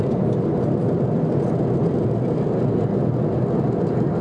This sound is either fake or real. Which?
real